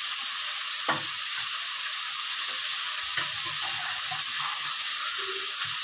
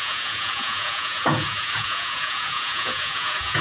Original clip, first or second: first